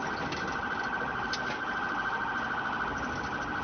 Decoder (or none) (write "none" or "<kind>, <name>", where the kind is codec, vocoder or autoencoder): none